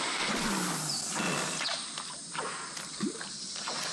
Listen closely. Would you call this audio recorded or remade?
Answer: recorded